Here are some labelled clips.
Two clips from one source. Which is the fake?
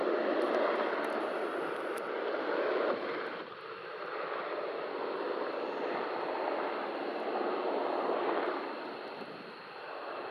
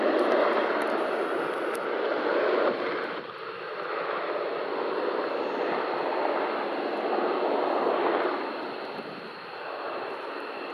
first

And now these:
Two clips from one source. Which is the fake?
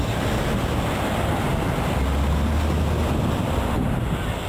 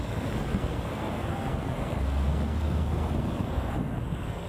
second